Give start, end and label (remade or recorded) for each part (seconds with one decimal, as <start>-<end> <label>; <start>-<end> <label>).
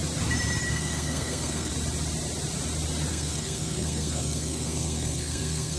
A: 0.0-0.7 recorded; 0.7-1.7 remade; 1.7-3.1 recorded; 3.1-5.8 remade